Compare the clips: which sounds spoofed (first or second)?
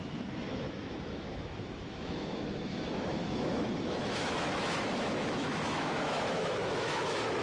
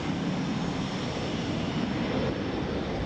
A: first